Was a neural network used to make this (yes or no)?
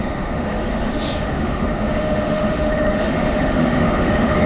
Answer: yes